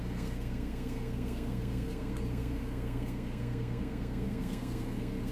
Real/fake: fake